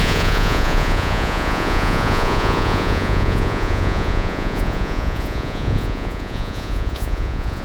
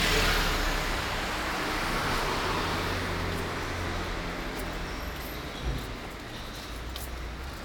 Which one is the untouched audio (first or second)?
second